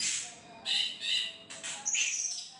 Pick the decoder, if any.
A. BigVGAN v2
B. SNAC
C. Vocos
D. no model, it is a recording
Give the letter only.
D